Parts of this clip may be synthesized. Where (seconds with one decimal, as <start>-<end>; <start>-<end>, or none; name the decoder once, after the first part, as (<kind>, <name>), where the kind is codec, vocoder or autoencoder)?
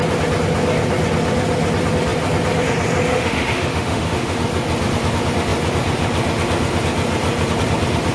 3.1-4.4 (autoencoder, DAC-VAE)